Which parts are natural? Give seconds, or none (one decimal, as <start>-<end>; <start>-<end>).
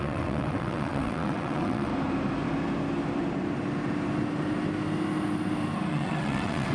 1.9-5.9